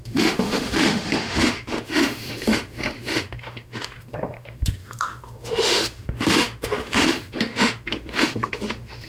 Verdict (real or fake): fake